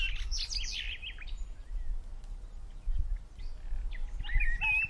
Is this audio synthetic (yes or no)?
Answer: no